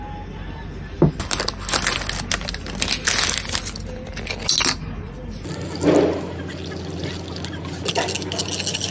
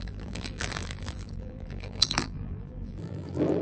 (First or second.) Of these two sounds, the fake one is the second